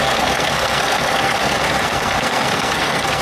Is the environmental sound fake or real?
fake